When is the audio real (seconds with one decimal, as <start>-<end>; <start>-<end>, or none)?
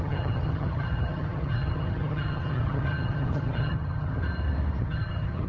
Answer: 4.2-4.8